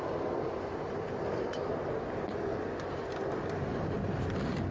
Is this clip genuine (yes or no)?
yes